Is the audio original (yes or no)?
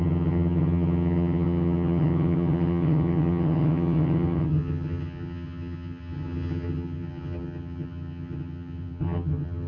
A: no